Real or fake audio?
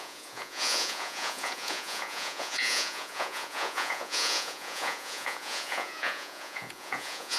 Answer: fake